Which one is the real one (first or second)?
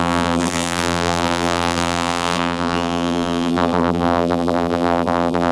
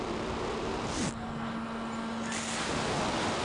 second